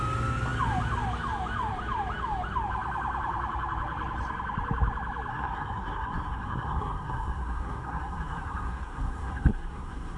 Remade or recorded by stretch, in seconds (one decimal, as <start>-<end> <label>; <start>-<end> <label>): 0.0-5.3 recorded; 5.3-10.2 remade